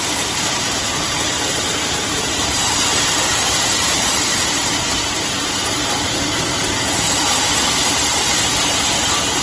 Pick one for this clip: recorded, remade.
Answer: remade